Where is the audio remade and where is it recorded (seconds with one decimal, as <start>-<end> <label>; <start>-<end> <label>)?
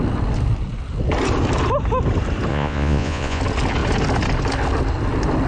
0.0-2.5 recorded; 2.5-3.4 remade; 3.4-5.5 recorded